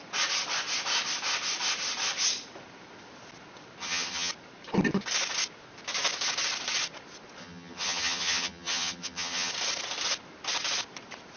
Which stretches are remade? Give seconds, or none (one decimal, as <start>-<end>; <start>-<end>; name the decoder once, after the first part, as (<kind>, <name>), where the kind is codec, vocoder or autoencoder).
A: 3.8-4.3 (vocoder, HiFi-GAN); 7.4-9.5